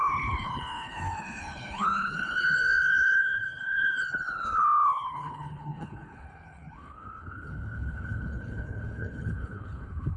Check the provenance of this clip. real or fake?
fake